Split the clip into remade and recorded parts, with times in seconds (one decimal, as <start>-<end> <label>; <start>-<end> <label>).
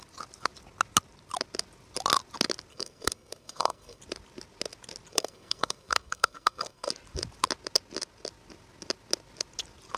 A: 0.0-2.7 recorded; 2.7-4.0 remade; 4.0-5.1 recorded; 5.1-6.9 remade; 6.9-10.0 recorded